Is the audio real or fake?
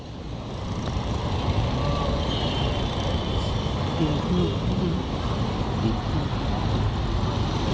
real